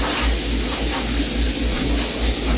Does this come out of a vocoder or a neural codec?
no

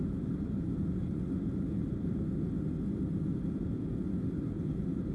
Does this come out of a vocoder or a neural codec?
no